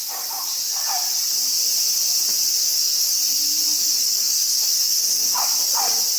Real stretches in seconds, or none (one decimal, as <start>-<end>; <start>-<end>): 0.0-2.6; 3.2-3.8; 5.4-6.2